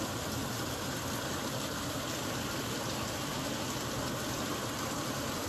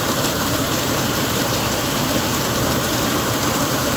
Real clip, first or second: first